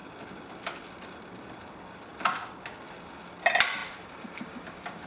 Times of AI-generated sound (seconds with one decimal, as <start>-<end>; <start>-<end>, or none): 3.8-5.1